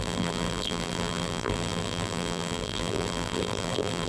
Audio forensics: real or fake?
fake